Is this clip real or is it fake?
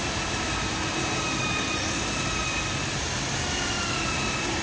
real